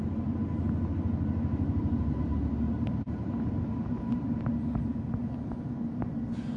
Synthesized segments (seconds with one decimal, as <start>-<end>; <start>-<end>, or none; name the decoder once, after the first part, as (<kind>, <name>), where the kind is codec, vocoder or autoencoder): 1.5-4.5 (vocoder, BigVGAN v2)